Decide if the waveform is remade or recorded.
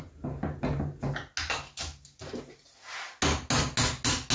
recorded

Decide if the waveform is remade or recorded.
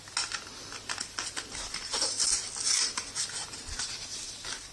recorded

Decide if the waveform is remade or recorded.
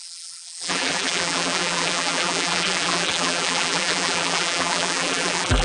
remade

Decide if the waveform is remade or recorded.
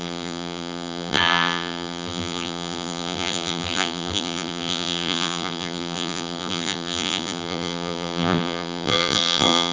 remade